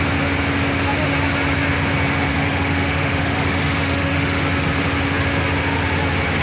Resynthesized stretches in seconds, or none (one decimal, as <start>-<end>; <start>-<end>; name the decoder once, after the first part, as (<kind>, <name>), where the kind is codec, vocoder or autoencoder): 2.3-4.4 (autoencoder, DAC-VAE)